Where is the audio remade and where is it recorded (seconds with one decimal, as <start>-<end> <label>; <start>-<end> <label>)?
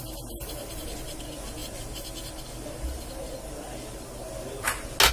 0.0-5.1 recorded